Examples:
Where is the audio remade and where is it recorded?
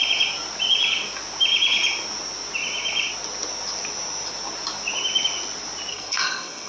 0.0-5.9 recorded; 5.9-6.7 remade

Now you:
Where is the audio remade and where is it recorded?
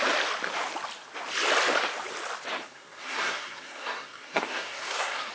0.0-2.6 recorded; 2.6-5.3 remade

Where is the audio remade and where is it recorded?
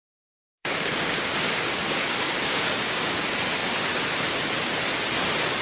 0.0-0.6 recorded; 0.6-3.2 remade; 3.2-5.6 recorded